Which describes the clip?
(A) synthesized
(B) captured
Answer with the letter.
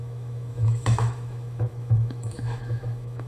A